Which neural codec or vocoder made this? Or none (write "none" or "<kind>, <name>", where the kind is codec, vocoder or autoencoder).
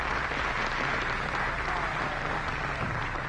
none